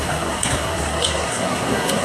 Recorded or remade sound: remade